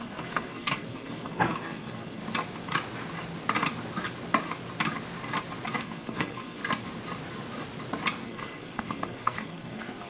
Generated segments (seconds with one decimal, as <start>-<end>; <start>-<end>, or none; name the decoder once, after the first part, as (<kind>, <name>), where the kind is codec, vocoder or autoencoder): 0.0-2.2 (codec, SNAC); 5.8-6.6; 8.2-10.1